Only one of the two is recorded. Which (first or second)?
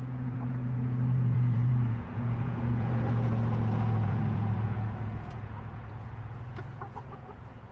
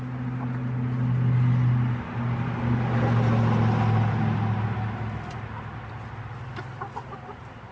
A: second